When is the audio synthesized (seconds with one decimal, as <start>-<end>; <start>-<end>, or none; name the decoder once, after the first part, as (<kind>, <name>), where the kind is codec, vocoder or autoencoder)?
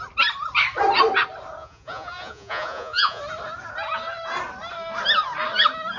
1.6-3.2 (vocoder, Vocos)